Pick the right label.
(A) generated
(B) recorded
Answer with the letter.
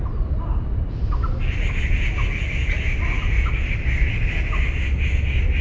B